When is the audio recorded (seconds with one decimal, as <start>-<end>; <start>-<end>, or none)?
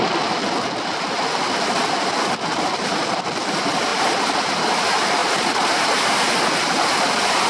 0.0-7.5